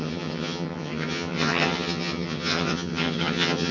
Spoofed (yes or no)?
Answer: yes